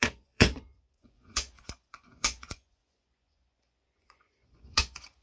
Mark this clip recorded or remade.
remade